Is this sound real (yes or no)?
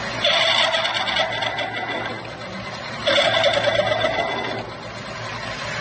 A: yes